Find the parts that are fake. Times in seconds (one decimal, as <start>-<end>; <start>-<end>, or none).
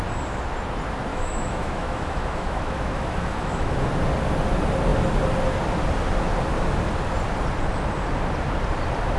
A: 1.1-3.9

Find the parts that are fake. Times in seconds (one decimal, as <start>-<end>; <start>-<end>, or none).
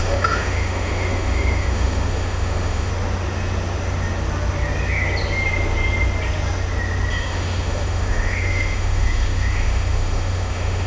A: 0.0-2.9; 7.1-10.9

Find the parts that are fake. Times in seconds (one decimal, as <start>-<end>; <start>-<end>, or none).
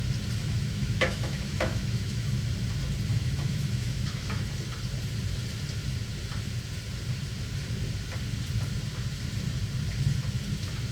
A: 0.4-2.4; 3.1-4.4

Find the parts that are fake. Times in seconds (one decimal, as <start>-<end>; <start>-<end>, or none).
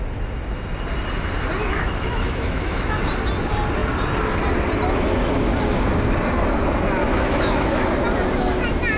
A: 1.6-3.0; 7.0-7.8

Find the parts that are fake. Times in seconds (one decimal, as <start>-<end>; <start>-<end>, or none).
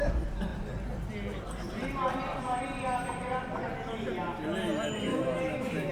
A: 5.1-5.9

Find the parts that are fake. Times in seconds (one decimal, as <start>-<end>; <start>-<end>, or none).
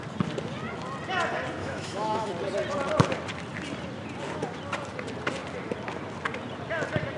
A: 1.6-2.3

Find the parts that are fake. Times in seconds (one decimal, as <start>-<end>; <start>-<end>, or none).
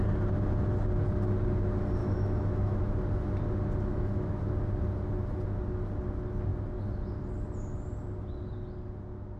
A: 2.0-2.8; 3.9-4.4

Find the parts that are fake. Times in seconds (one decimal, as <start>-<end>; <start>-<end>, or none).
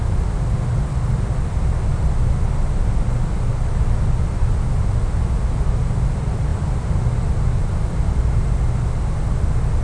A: none